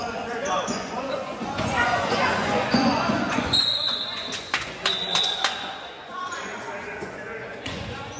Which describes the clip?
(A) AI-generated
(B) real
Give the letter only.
A